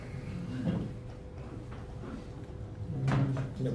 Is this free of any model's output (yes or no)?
yes